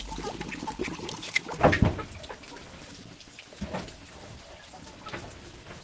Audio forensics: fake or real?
real